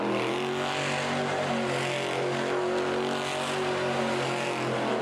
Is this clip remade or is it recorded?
recorded